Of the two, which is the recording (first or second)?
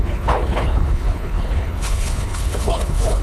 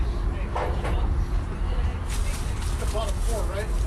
second